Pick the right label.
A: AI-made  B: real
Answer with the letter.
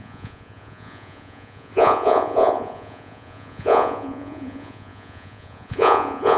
A